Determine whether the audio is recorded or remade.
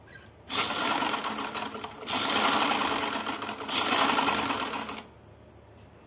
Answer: recorded